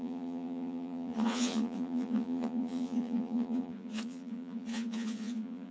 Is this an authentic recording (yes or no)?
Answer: no